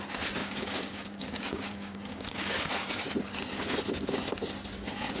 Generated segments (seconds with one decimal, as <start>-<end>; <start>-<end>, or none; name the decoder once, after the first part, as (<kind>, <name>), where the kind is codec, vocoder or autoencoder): 0.4-2.7 (codec, DAC)